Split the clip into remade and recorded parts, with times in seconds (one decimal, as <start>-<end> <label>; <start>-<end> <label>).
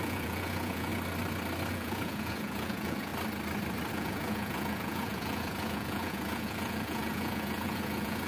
0.0-0.9 remade; 0.9-1.7 recorded; 1.7-3.1 remade; 3.1-3.9 recorded; 3.9-8.3 remade